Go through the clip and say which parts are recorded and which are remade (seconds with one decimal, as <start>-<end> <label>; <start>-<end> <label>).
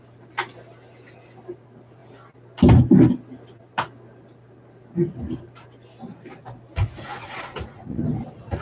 0.0-6.8 recorded; 6.8-8.0 remade; 8.0-8.6 recorded